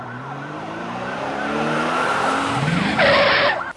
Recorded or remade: remade